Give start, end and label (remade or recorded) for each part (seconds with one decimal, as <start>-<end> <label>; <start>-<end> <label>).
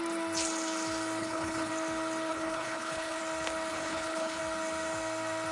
0.0-1.2 recorded; 1.2-1.7 remade; 1.7-2.3 recorded; 2.3-3.2 remade; 3.2-3.7 recorded; 3.7-4.4 remade; 4.4-5.5 recorded